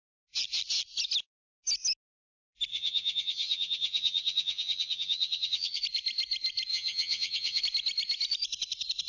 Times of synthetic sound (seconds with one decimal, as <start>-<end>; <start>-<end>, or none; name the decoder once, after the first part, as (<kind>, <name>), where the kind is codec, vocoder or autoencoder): 2.7-5.8 (vocoder, HiFi-GAN); 6.7-7.6